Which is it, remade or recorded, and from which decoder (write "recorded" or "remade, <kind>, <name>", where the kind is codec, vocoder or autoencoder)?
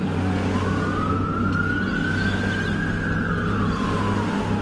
recorded